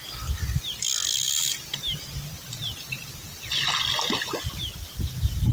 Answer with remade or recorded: recorded